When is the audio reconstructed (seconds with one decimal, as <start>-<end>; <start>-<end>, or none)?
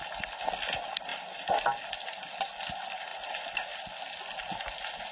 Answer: none